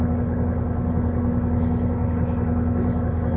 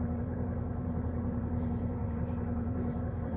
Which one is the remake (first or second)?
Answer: second